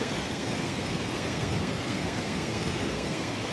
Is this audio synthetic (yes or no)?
yes